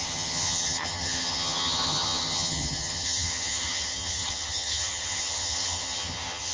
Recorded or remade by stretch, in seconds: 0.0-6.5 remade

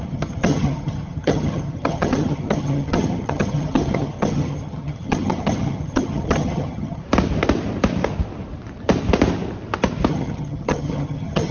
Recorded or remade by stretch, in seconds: 0.0-7.0 remade; 7.0-10.1 recorded; 10.1-11.5 remade

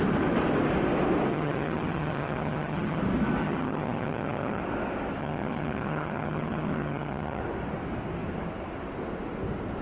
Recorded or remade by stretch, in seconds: 0.0-1.3 recorded; 1.3-3.0 remade; 3.0-3.4 recorded; 3.4-4.6 remade; 4.6-5.2 recorded; 5.2-7.4 remade; 7.4-9.8 recorded

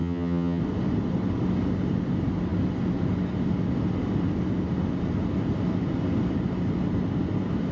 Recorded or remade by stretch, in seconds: 0.0-0.6 remade; 0.6-7.7 recorded

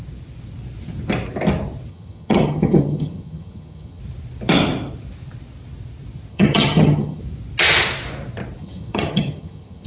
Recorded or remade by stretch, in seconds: 0.0-1.9 recorded; 1.9-4.0 remade; 4.0-6.3 recorded; 6.3-7.2 remade; 7.2-8.6 recorded; 8.6-9.9 remade

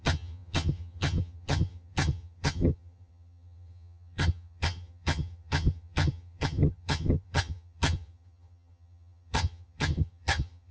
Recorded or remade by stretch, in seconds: 0.0-10.7 remade